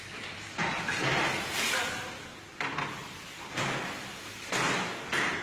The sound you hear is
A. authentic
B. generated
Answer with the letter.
B